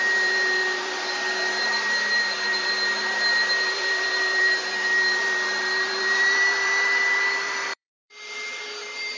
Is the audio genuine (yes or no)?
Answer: no